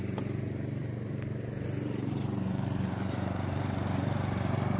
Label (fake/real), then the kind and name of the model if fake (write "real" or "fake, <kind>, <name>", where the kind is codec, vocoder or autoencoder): fake, vocoder, BigVGAN v2